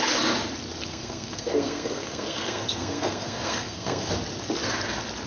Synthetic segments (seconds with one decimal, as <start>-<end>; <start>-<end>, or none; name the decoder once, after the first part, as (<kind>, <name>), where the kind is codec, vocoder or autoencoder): 0.9-4.1 (codec, SNAC)